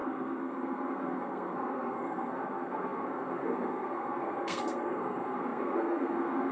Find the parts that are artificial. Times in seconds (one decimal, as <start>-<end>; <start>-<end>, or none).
0.0-6.5